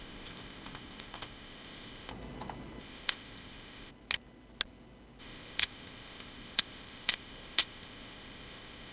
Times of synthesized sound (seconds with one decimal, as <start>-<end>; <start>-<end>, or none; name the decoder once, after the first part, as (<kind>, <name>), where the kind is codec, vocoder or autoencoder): 0.0-2.1 (codec, ZipCodec); 2.8-3.9; 5.2-8.9